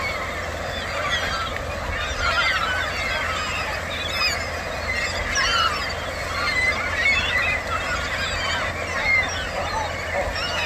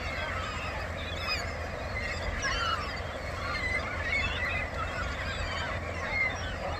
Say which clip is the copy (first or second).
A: second